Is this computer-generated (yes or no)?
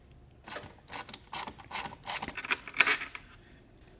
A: no